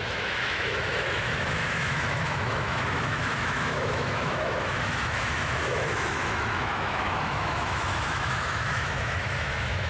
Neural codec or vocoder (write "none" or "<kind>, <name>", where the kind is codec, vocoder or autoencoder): autoencoder, DAC-VAE